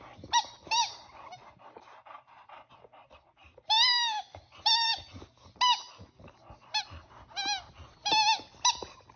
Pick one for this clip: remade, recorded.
recorded